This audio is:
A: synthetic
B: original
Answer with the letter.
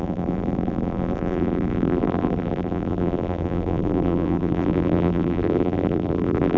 A